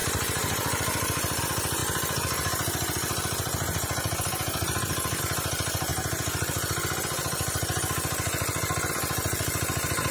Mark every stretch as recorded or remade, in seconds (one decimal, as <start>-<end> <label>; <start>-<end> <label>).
0.0-1.4 remade; 1.4-10.1 recorded